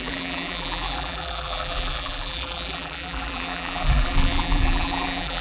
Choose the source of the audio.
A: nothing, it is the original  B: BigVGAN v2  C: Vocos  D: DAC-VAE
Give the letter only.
B